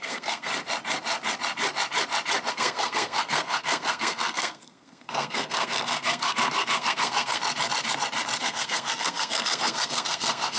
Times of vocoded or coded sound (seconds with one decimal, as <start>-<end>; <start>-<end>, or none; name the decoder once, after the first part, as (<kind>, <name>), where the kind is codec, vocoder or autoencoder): 0.0-0.5 (codec, SNAC); 2.5-7.4; 8.4-10.6